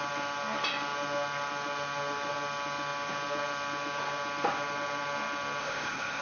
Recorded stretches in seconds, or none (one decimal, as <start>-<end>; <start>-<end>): 0.0-5.6